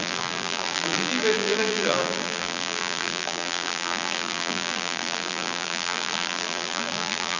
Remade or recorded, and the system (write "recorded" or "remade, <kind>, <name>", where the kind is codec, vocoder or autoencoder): remade, vocoder, BigVGAN v2